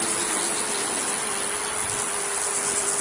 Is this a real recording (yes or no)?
yes